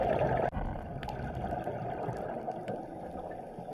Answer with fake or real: real